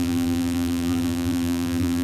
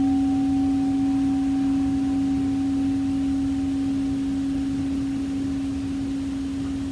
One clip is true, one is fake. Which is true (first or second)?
second